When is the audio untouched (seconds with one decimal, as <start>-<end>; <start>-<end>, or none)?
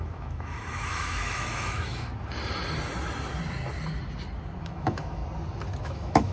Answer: 2.1-4.6; 5.2-5.8